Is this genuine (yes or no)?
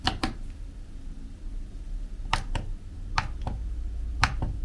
yes